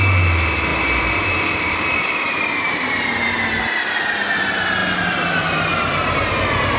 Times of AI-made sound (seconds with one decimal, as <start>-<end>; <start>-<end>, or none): 0.7-3.0; 4.8-6.3